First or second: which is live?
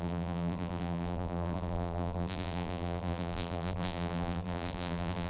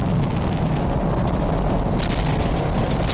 second